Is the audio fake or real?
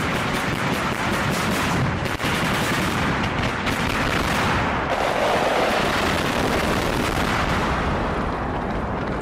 fake